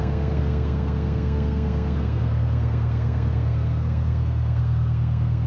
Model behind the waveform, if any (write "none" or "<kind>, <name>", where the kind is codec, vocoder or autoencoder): codec, SNAC